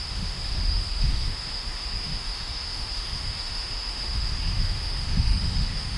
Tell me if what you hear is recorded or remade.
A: remade